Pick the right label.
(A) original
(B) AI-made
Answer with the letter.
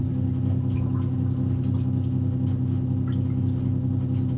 A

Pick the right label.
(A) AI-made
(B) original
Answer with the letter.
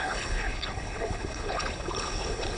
A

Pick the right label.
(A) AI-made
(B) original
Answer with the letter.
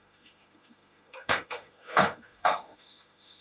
A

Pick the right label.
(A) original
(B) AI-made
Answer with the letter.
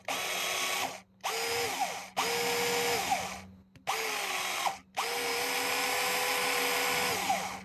A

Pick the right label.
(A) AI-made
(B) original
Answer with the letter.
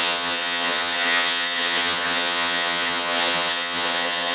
A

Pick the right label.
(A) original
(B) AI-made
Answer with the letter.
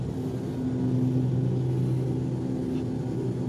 A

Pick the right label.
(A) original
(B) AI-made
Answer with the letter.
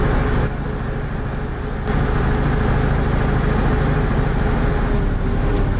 A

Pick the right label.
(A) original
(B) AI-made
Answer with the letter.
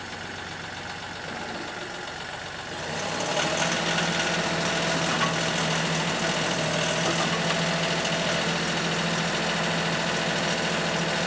A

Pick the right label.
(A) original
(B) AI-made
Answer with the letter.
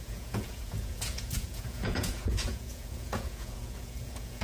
B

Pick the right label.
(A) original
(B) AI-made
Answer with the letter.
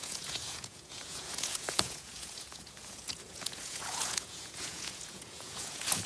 B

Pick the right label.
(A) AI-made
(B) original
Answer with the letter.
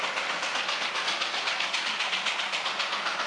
B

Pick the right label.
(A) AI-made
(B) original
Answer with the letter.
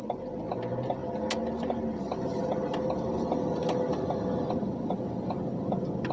B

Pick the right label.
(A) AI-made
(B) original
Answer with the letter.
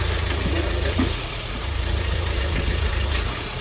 A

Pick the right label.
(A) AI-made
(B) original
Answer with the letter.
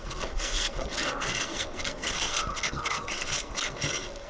A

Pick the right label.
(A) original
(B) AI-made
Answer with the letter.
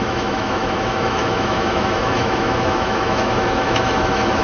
B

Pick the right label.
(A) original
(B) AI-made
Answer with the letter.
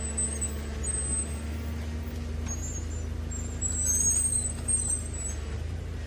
A